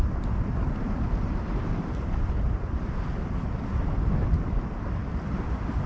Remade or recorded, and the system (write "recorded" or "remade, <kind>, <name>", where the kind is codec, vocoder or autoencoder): recorded